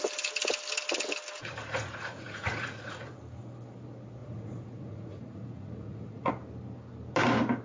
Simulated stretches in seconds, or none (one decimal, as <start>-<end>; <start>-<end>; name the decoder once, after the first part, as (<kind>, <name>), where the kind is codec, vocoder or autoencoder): 1.4-3.2 (vocoder, Vocos); 4.2-6.3